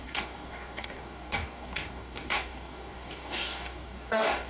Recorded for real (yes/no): no